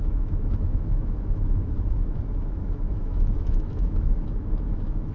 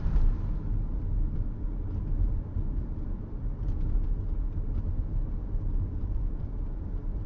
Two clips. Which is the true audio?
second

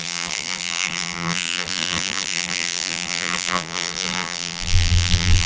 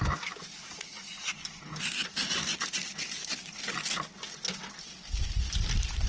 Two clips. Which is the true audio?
second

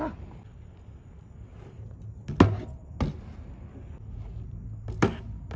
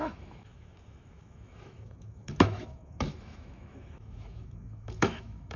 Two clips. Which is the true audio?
first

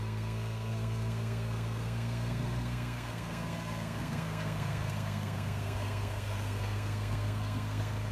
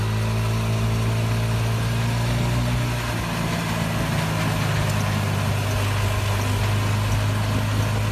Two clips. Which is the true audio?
second